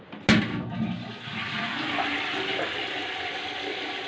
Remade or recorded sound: recorded